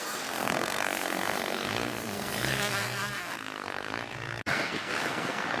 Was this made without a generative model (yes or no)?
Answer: no